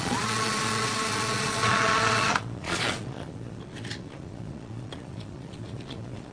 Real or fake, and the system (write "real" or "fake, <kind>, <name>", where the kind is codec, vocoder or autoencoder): fake, vocoder, Vocos